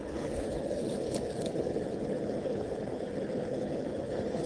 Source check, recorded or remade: remade